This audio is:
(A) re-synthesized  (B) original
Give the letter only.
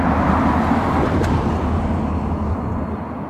B